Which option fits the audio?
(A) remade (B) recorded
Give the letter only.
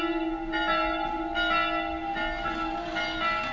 B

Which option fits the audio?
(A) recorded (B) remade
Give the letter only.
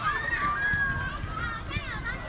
A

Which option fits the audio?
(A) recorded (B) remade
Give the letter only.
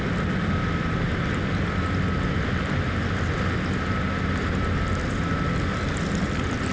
A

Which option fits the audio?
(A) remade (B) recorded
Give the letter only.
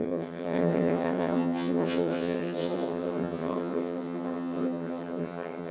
A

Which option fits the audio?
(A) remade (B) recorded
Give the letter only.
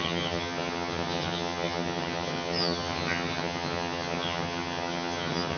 A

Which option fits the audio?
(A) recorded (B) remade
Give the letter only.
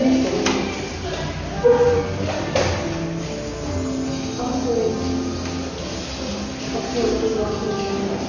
A